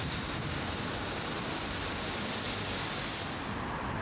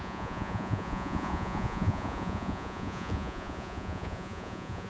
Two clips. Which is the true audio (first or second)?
first